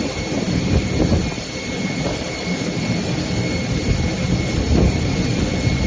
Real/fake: fake